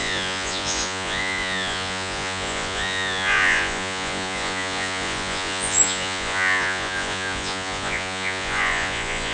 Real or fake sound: fake